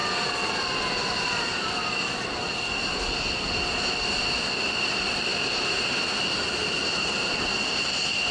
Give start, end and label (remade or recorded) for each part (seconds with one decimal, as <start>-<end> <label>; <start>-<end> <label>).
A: 0.0-2.3 remade; 2.3-5.3 recorded; 5.3-5.8 remade; 5.8-6.6 recorded; 6.6-7.4 remade; 7.4-8.3 recorded